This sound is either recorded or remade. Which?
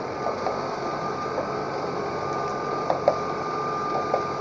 recorded